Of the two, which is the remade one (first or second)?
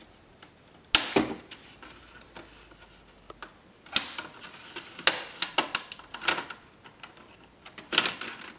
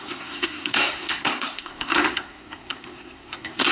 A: second